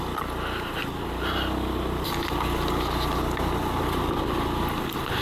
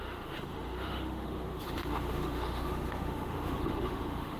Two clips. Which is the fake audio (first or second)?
second